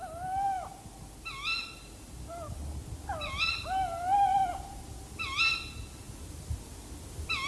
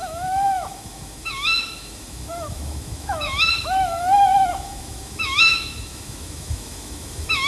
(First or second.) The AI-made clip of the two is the second